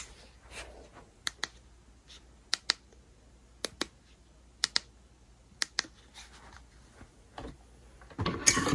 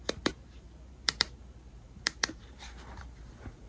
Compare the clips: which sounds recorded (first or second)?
first